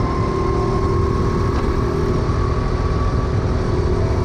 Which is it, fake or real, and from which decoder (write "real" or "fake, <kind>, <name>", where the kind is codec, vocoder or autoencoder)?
real